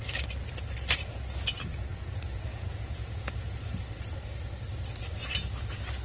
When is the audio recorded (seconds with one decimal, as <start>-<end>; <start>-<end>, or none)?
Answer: 0.0-1.9; 4.0-6.0

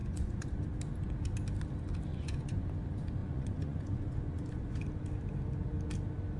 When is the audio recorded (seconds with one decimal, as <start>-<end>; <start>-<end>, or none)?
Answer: 0.6-2.1; 2.7-3.2; 4.8-6.4